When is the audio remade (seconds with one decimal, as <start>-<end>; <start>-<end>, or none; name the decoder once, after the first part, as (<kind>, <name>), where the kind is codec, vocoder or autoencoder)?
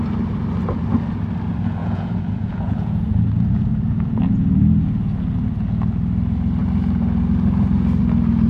1.8-4.6 (vocoder, Vocos)